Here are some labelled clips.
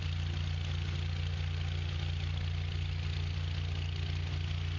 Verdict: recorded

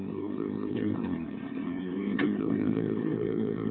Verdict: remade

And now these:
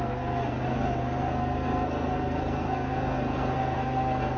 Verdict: remade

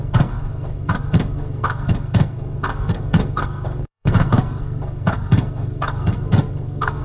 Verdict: remade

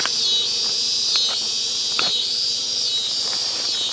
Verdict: recorded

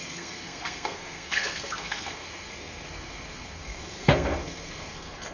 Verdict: remade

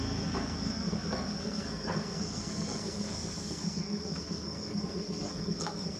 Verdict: remade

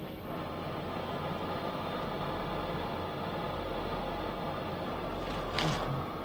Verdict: recorded